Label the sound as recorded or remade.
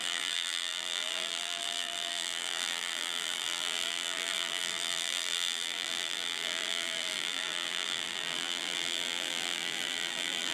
remade